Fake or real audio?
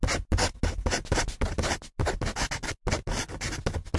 real